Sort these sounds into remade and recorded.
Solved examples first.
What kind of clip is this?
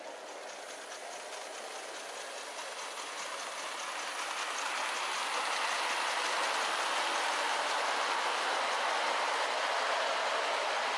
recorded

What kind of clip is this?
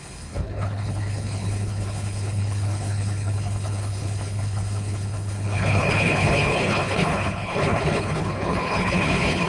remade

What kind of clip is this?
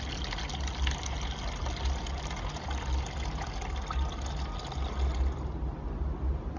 recorded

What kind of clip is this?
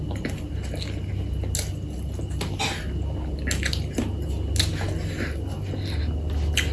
recorded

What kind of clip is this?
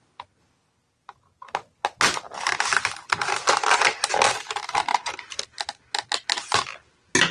recorded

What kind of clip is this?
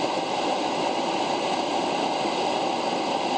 recorded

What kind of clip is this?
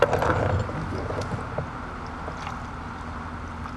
recorded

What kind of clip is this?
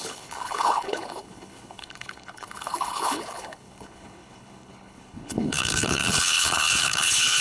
remade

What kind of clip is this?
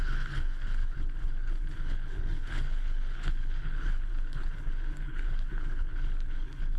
remade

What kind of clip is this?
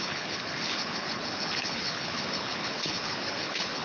remade